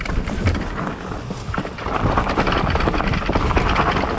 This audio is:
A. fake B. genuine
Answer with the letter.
B